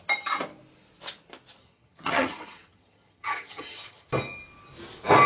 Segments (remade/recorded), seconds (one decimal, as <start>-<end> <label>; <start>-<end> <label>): 0.0-1.6 recorded; 1.6-4.1 remade; 4.1-5.3 recorded